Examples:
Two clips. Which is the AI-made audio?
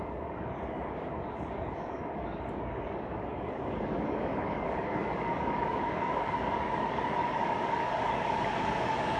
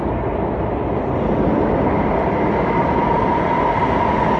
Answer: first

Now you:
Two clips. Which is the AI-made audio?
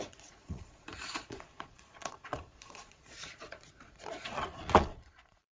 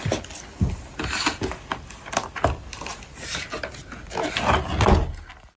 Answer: first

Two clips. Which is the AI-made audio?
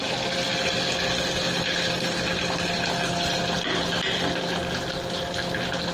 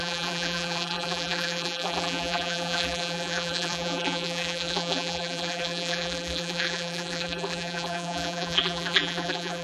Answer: second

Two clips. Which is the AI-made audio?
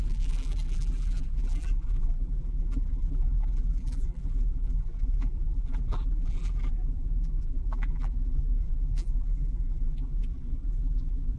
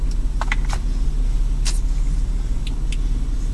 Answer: first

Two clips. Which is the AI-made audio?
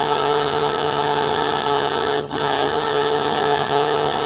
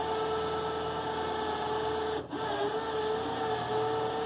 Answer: first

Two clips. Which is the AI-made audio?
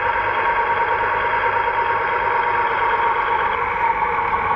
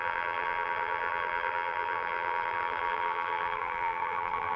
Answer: second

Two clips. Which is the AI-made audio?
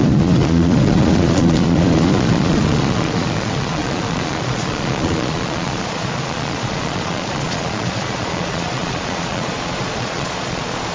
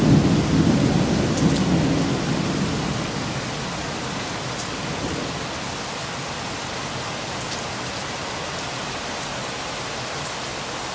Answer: first